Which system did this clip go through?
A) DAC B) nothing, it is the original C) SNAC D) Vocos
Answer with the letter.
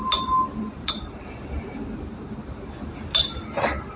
B